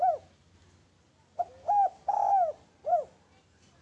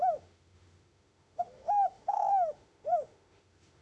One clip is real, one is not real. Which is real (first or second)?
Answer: first